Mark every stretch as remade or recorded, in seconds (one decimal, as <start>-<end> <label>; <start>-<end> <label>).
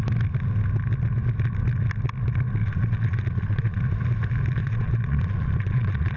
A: 0.0-2.6 recorded; 2.6-3.8 remade; 3.8-4.6 recorded; 4.6-6.2 remade